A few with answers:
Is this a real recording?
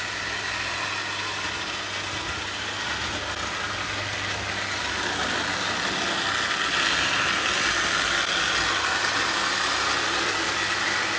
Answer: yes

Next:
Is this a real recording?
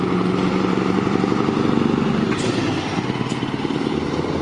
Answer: no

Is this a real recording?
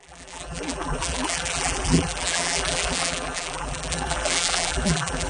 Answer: no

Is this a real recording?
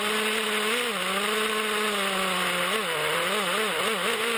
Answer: yes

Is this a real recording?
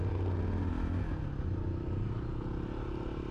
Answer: yes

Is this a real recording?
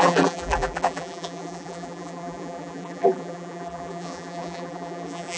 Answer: no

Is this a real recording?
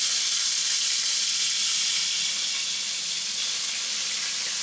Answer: yes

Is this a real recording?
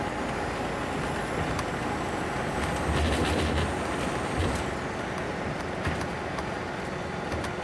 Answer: yes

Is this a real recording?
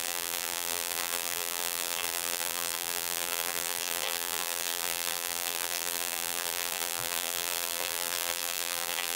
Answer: no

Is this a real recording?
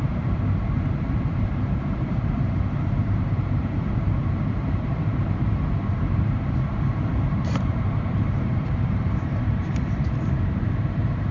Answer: no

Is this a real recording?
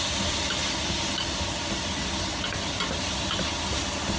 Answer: yes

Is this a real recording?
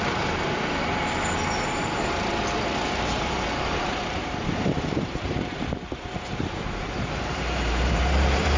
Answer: no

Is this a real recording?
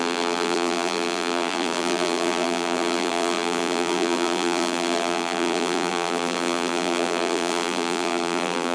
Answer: no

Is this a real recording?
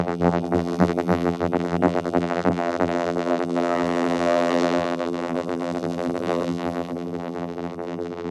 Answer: no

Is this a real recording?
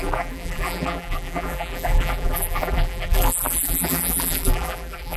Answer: no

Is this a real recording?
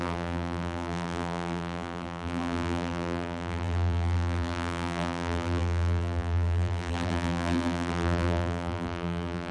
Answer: no